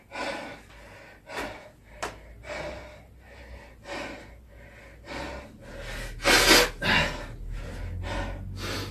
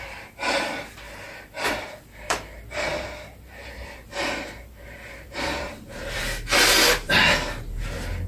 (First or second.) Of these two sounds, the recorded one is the first